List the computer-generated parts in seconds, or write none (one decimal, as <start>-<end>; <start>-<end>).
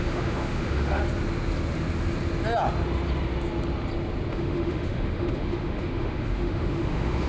0.0-1.0; 4.3-7.3